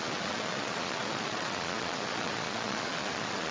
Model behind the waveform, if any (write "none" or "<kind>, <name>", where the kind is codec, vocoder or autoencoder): vocoder, Vocos